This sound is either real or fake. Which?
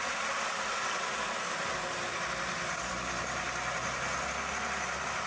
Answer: real